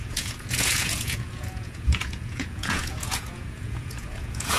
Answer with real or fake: fake